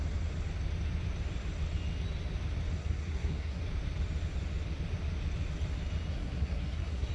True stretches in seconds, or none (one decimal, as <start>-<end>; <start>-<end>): 0.0-2.8; 3.6-6.1